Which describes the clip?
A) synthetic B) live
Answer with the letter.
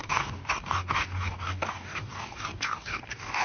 A